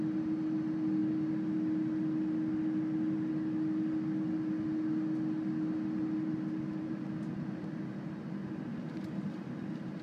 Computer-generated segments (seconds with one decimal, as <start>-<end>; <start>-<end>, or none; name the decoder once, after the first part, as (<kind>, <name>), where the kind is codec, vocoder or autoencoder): none